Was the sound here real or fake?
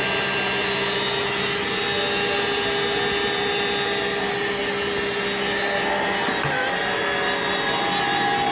real